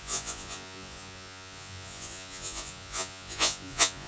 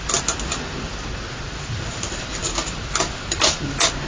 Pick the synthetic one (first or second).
first